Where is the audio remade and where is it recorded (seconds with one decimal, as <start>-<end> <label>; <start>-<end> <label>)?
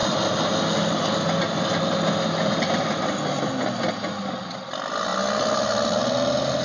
0.0-6.6 recorded